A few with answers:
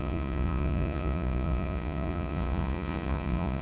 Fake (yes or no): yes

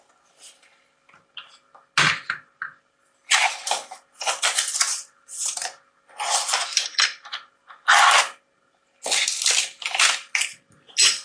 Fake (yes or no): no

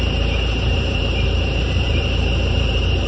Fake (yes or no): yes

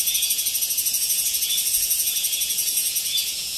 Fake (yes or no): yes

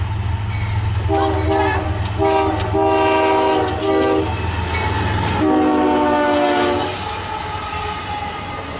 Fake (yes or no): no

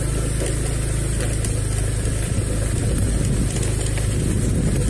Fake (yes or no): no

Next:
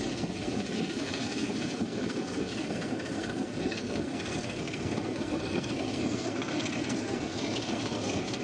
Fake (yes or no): yes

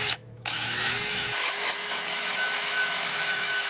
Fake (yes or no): yes